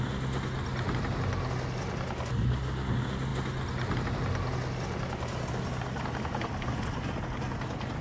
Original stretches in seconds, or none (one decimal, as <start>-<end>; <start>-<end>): 0.0-8.0